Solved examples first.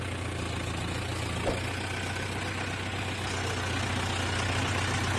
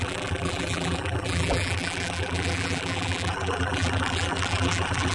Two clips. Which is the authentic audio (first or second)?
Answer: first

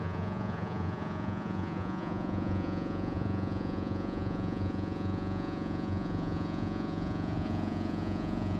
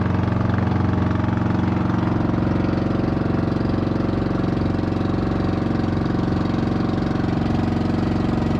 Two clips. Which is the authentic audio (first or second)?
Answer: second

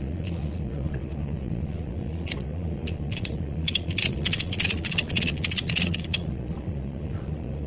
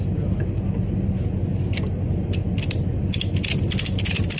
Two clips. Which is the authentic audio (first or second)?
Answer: second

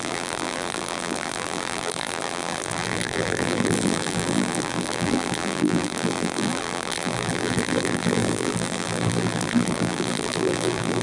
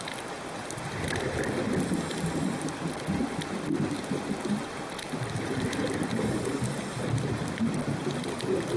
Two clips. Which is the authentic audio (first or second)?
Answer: second